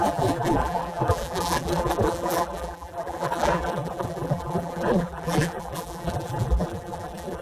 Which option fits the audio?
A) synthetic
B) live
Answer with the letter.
A